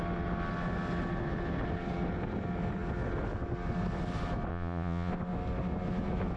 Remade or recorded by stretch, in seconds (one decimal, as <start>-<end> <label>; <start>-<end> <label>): 0.0-4.5 recorded; 4.5-5.1 remade; 5.1-6.4 recorded